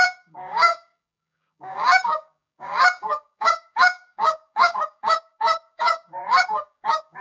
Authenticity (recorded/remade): remade